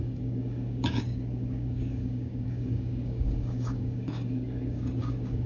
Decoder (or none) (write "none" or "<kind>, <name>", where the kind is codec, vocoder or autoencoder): codec, DAC